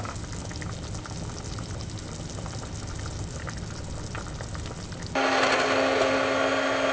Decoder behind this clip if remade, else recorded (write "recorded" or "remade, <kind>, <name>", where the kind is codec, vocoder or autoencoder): recorded